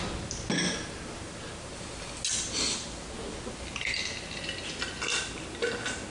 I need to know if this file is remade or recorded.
recorded